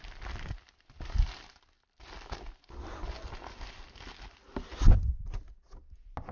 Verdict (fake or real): real